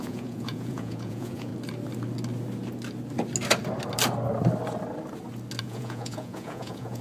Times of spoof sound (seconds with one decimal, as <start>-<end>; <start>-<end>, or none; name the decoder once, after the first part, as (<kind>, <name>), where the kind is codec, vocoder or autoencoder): 0.0-1.5 (vocoder, Vocos); 5.6-7.0